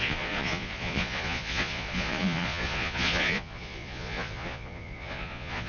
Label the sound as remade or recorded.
remade